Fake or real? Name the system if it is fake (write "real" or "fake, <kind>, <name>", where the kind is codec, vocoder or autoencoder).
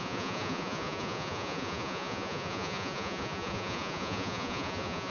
fake, vocoder, Vocos